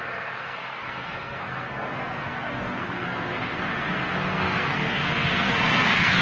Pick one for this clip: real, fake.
fake